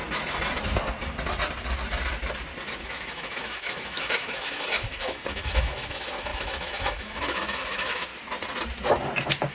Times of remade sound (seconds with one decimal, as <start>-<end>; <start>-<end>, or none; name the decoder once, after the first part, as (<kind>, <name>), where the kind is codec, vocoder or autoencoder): 2.8-8.1 (autoencoder, DAC-VAE)

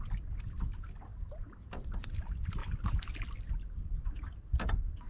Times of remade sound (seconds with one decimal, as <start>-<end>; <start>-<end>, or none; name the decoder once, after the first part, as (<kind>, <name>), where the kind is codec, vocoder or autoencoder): none

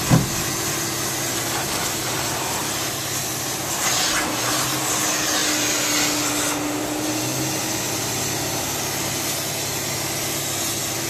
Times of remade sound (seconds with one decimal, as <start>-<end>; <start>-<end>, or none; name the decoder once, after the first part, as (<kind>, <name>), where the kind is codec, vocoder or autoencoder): 2.6-3.2 (vocoder, BigVGAN v2)

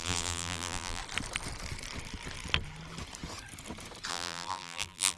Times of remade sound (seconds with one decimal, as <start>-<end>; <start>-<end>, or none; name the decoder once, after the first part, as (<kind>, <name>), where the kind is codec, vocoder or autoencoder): 0.0-1.0 (vocoder, BigVGAN v2); 4.1-5.2

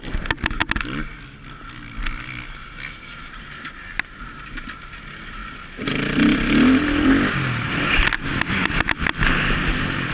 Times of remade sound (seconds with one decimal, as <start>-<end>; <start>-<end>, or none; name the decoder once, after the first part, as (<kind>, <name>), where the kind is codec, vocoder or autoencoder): none

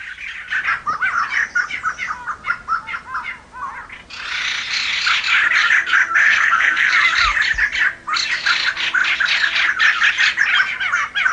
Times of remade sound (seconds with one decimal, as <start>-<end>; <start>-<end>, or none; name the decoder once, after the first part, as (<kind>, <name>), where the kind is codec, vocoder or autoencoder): 6.2-6.9 (codec, SNAC)